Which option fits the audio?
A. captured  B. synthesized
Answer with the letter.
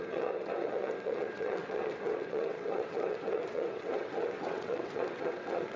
B